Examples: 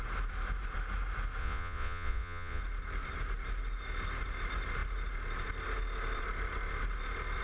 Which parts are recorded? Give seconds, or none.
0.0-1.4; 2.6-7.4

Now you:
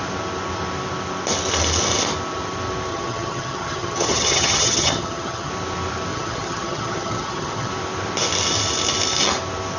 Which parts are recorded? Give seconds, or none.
0.0-2.9; 5.5-6.1; 7.7-9.8

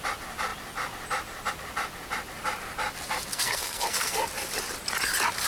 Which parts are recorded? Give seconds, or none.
0.0-3.3; 4.2-5.5

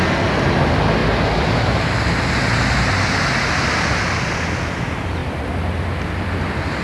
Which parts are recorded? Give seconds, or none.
0.0-6.8

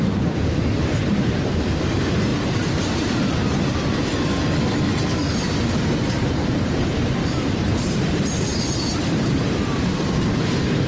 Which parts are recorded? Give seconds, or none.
4.1-6.0